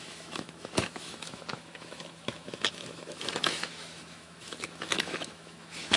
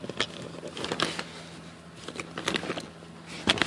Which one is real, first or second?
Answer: second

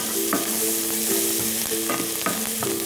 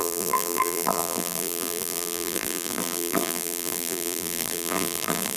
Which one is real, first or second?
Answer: first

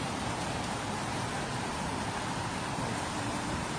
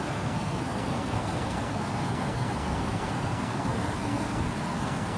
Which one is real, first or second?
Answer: first